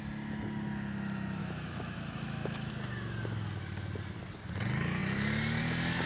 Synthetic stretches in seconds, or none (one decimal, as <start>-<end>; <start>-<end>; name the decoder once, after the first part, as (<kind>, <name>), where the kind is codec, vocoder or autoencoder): 1.4-2.7 (autoencoder, DAC-VAE)